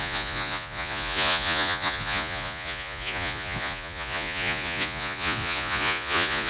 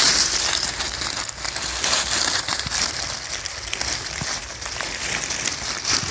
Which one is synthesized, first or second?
first